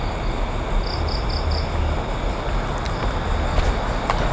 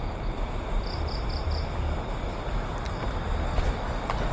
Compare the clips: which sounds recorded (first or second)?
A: first